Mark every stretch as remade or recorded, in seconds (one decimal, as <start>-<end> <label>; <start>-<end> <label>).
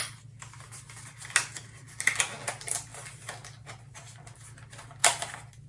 0.0-5.0 recorded; 5.0-5.7 remade